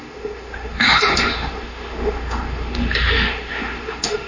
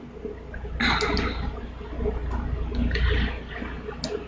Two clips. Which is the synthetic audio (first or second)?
first